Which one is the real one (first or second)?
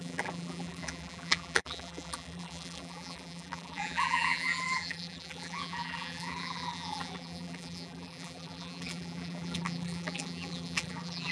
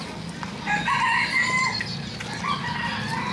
second